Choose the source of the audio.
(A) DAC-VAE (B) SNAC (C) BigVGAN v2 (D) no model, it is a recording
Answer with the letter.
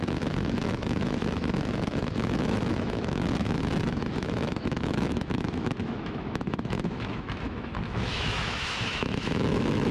A